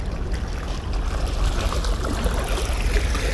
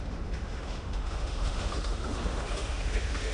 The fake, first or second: second